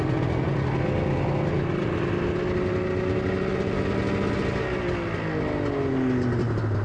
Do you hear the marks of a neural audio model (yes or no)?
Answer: no